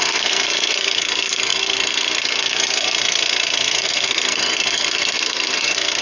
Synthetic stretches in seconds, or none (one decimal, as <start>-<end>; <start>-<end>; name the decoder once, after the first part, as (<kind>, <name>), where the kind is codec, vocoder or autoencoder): 0.0-6.0 (codec, SNAC)